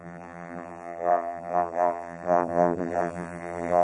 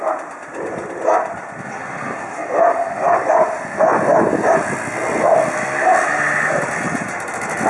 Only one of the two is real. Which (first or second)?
second